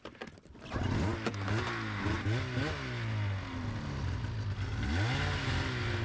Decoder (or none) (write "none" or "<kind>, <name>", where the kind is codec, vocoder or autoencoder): none